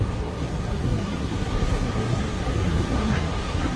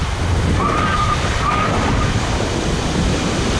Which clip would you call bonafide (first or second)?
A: second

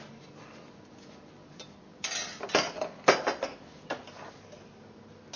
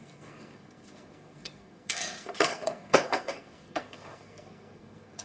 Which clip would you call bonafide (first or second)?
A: first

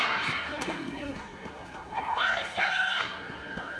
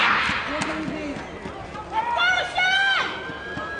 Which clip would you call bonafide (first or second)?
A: second